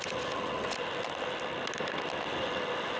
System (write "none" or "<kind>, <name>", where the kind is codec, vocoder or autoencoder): none